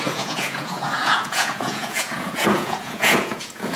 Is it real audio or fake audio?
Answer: fake